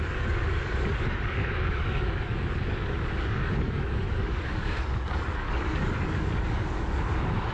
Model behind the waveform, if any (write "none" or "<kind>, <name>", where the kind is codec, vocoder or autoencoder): codec, DAC